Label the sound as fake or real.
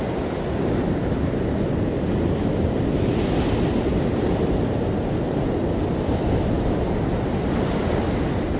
real